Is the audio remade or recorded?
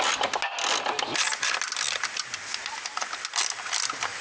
recorded